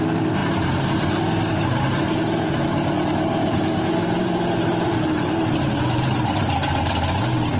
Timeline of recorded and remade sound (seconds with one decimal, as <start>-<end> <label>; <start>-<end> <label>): 0.0-0.4 recorded; 0.4-2.5 remade; 2.5-3.4 recorded; 3.4-6.9 remade; 6.9-7.6 recorded